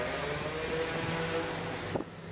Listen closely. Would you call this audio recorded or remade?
recorded